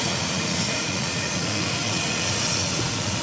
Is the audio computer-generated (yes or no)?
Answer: yes